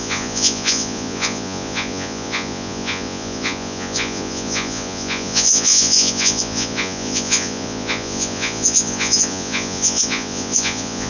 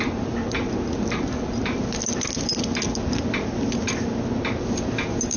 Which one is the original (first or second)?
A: second